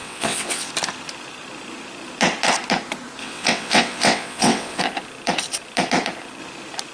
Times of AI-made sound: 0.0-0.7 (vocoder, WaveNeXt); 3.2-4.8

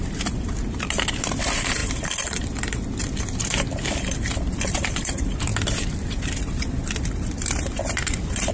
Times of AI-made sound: 0.0-8.5 (vocoder, BigVGAN v2)

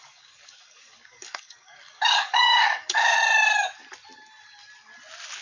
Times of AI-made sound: 0.0-3.2 (codec, DAC)

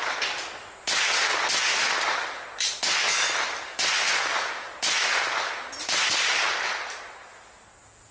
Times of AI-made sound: none

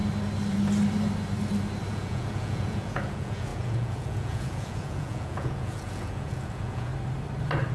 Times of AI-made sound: 1.9-6.9 (vocoder, Vocos)

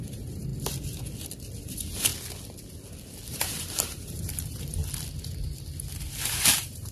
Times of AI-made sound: 0.0-0.5 (vocoder, BigVGAN v2); 1.6-2.1; 3.3-4.8; 6.2-6.9

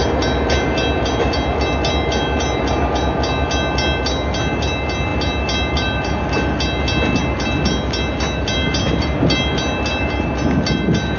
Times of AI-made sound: none

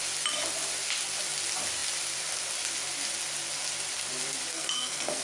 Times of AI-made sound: 4.5-5.2 (codec, SNAC)